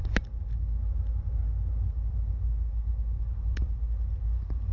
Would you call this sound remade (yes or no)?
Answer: no